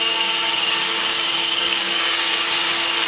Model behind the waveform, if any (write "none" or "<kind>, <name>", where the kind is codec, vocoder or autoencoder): codec, DAC